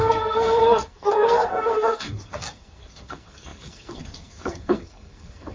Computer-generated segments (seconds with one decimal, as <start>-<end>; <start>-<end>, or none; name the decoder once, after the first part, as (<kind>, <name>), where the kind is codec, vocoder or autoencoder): 0.0-5.5 (codec, SNAC)